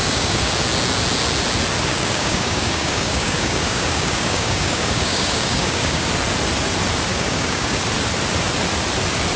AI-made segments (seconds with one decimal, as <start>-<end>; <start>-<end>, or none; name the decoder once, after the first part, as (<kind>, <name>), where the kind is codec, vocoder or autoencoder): 0.0-0.5 (codec, DAC); 1.9-6.1; 7.1-7.8